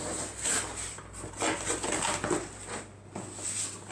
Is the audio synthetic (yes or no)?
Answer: no